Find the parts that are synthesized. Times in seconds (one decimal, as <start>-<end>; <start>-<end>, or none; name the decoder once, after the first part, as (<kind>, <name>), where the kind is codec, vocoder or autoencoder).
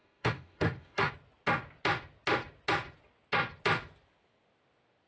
0.0-1.1 (autoencoder, DAC-VAE)